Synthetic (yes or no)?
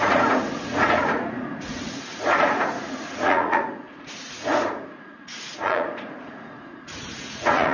yes